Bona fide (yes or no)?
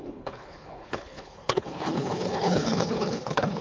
no